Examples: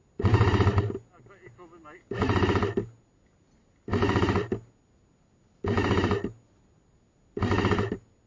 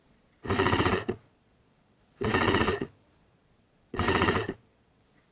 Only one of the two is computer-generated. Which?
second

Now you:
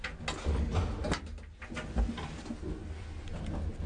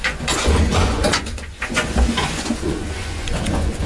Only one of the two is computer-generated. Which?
second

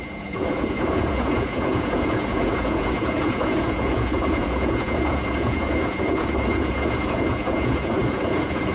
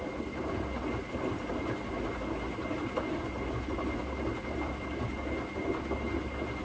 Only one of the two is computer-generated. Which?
first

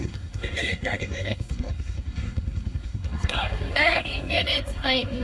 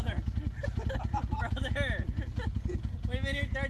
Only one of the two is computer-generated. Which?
first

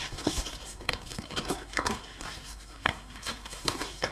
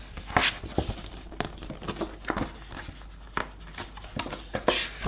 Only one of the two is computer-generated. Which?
first